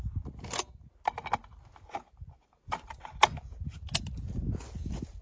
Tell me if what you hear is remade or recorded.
recorded